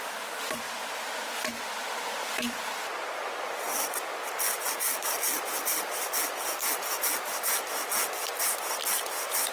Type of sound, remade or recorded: recorded